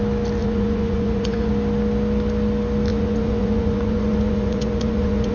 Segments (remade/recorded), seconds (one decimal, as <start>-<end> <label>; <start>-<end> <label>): 0.0-0.4 recorded; 0.4-1.5 remade; 1.5-2.9 recorded; 2.9-5.3 remade